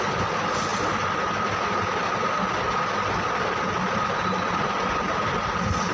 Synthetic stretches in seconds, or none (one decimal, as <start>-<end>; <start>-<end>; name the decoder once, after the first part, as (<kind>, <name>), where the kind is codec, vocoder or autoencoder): none

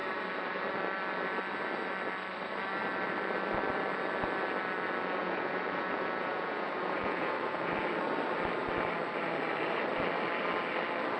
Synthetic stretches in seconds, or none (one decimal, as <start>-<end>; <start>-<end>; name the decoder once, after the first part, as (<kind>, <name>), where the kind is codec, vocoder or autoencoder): 5.2-7.7 (vocoder, Vocos)

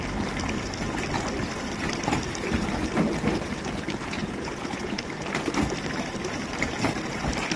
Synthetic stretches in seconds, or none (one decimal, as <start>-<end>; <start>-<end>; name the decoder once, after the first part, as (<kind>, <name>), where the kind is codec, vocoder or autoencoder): 4.2-5.0 (vocoder, Vocos)

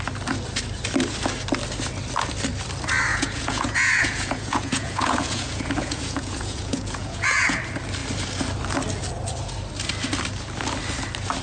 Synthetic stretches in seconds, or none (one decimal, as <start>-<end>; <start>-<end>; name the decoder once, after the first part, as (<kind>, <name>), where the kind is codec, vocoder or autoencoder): 3.1-7.6 (vocoder, Vocos)